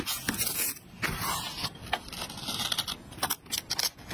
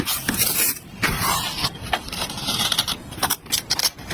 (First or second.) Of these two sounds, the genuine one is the first